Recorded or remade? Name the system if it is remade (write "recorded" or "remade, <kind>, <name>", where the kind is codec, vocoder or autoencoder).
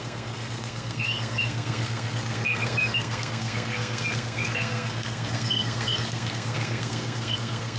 remade, codec, SNAC